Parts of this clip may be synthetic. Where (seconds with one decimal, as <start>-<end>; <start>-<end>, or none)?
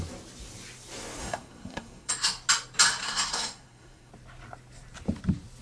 1.2-2.1; 3.0-4.1